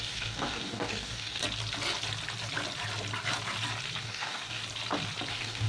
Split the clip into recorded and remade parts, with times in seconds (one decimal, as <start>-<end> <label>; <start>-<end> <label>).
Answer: 0.0-1.4 remade; 1.4-4.0 recorded; 4.0-4.6 remade; 4.6-5.3 recorded; 5.3-5.7 remade